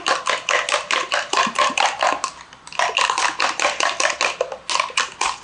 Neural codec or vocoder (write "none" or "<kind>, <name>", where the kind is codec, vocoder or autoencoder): none